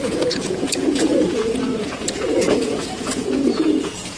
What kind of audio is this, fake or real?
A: fake